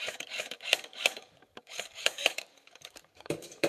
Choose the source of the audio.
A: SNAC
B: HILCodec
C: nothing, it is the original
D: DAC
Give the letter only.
D